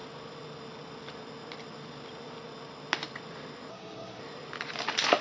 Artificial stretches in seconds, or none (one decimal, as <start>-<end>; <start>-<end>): 3.7-4.2